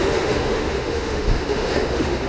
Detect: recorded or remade remade